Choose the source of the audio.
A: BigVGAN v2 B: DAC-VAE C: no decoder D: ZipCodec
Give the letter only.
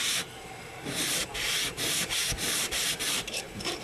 A